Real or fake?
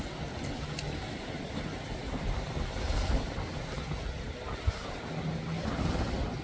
real